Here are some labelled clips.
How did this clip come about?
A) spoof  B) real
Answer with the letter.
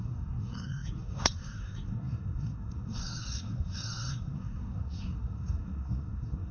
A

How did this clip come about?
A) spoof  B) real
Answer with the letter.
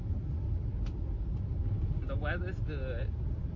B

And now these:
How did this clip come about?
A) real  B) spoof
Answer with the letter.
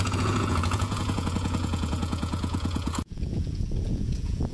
B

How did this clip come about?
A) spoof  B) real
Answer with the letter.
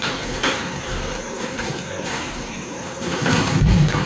A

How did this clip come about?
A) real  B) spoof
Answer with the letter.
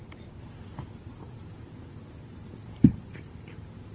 A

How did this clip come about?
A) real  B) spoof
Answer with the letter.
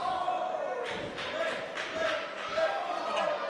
A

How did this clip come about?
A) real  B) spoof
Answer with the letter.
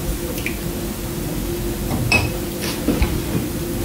A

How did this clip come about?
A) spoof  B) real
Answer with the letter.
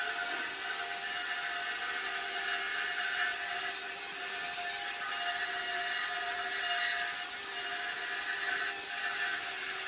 B